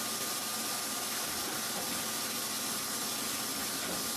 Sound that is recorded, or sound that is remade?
recorded